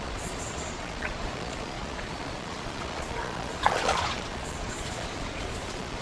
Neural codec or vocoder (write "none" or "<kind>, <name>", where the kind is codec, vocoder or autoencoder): vocoder, Vocos